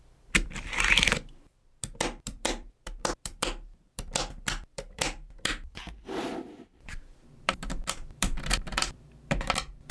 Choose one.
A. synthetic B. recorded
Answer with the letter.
A